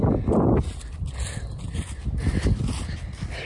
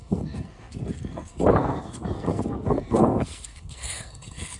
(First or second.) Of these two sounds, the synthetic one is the second